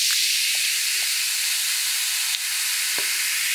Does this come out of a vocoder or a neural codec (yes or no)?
no